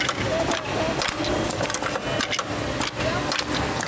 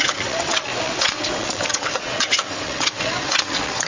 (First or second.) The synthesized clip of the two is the second